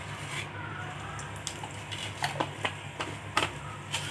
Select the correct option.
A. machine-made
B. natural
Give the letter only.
B